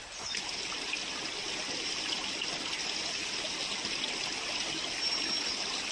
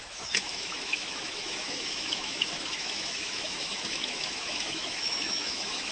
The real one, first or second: first